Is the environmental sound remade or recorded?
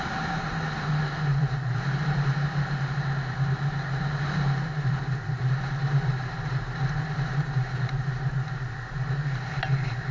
recorded